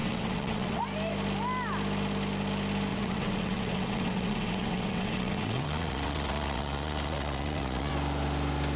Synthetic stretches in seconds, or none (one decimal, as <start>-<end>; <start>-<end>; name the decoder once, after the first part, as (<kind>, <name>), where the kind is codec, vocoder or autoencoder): 0.0-0.8 (vocoder, WaveNeXt); 2.9-7.9

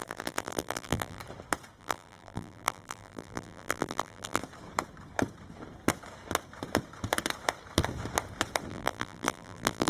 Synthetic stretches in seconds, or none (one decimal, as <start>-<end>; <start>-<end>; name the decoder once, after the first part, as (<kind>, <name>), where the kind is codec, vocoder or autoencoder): 0.0-1.2 (vocoder, BigVGAN v2); 1.8-4.4; 8.7-9.9

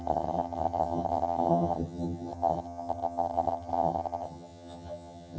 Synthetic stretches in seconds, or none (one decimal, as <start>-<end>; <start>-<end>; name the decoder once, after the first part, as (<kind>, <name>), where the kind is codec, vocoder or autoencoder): 0.0-5.4 (vocoder, HiFi-GAN)